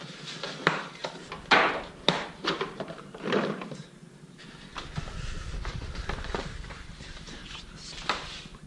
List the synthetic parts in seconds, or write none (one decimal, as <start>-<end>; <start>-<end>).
0.0-1.0; 2.4-4.7; 5.7-7.4